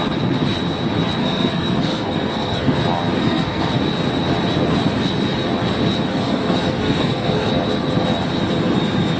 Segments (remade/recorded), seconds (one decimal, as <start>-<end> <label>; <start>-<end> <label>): 0.0-1.2 recorded; 1.2-2.8 remade; 2.8-3.2 recorded; 3.2-3.8 remade; 3.8-6.1 recorded; 6.1-7.5 remade; 7.5-9.2 recorded